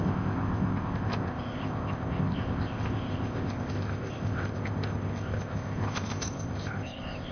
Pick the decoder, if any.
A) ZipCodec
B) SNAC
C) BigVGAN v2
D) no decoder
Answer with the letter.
A